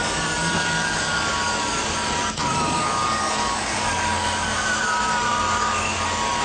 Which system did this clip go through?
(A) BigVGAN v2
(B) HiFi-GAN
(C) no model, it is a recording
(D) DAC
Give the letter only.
D